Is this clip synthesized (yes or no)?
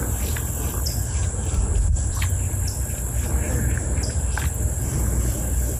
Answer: no